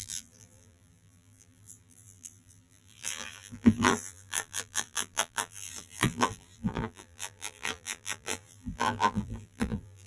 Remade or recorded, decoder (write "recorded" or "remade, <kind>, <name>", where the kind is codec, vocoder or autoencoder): remade, vocoder, BigVGAN v2